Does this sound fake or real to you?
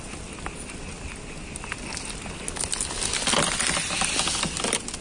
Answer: real